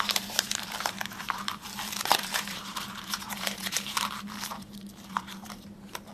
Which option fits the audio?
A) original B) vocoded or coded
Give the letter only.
B